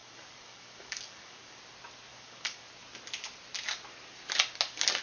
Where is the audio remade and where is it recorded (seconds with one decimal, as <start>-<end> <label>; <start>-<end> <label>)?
0.0-1.6 remade; 1.6-2.1 recorded; 2.1-2.7 remade; 2.7-5.0 recorded